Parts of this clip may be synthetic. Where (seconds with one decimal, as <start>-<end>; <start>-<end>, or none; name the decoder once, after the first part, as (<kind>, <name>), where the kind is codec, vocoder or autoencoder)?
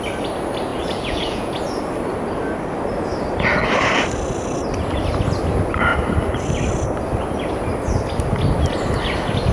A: 0.7-1.6 (vocoder, Vocos)